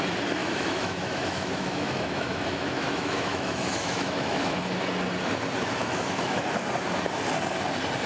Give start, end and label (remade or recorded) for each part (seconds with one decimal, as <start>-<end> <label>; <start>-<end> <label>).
0.0-0.4 recorded; 0.4-4.6 remade; 4.6-5.8 recorded; 5.8-6.4 remade; 6.4-8.1 recorded